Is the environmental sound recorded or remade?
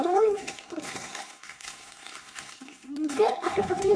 remade